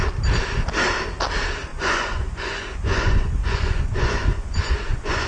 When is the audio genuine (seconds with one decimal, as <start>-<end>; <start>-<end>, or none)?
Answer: 0.0-1.7